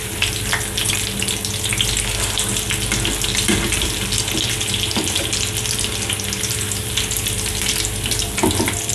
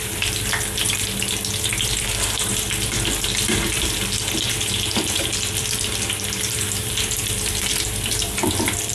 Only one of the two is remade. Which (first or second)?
second